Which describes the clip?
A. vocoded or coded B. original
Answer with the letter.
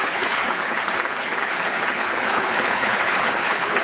A